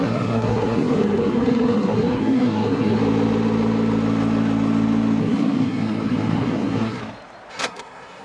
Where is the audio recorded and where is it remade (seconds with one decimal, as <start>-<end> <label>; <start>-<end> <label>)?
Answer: 0.0-3.0 remade; 3.0-5.2 recorded; 5.2-7.0 remade; 7.0-7.5 recorded; 7.5-8.2 remade